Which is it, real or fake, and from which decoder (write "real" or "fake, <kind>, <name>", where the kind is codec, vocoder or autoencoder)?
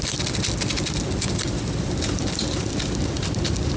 fake, vocoder, BigVGAN v2